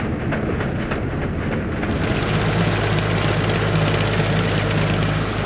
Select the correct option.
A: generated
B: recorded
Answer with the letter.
B